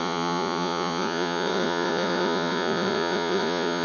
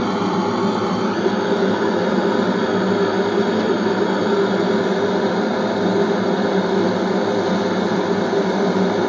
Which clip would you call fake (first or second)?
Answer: first